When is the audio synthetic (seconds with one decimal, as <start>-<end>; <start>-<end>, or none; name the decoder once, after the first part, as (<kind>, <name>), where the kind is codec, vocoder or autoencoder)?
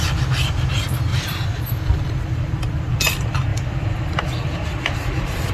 1.1-2.9 (vocoder, BigVGAN v2); 3.5-5.5